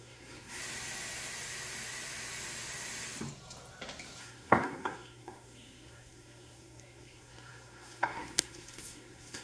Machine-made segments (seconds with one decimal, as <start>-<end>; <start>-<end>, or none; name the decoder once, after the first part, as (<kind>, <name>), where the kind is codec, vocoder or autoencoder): 0.0-0.6 (codec, SNAC); 4.2-9.4